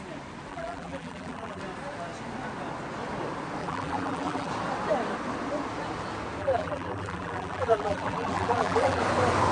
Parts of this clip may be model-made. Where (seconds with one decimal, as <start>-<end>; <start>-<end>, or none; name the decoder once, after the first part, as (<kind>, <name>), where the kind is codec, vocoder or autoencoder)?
0.5-1.6 (vocoder, BigVGAN v2); 3.6-4.5; 6.4-9.0